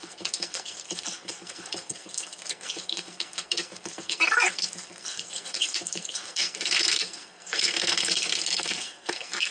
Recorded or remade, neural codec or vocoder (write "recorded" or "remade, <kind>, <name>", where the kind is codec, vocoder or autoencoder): remade, codec, SNAC